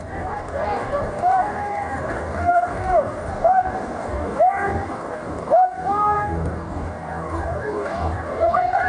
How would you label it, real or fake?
fake